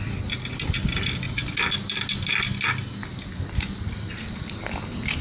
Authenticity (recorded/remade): recorded